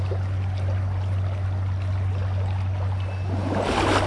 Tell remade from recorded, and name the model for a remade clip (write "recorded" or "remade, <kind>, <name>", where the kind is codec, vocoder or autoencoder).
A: recorded